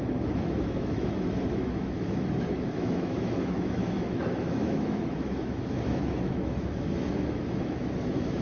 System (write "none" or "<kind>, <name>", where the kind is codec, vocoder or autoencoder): autoencoder, DAC-VAE